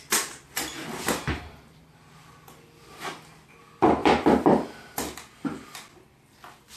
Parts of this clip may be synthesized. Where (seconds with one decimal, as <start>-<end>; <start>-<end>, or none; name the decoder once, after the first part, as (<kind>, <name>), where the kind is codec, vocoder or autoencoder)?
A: none